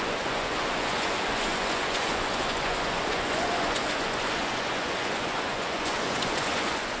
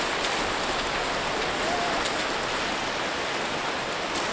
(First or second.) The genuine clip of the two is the second